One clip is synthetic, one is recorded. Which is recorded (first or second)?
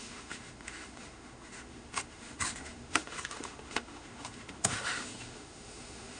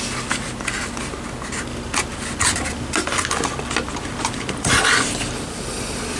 second